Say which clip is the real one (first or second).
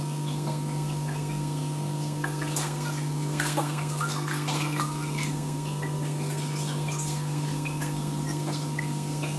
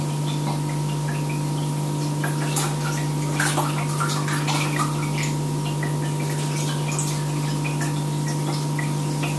second